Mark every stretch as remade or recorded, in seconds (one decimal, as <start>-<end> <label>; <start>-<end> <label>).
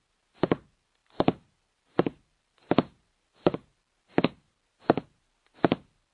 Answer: 0.0-6.1 recorded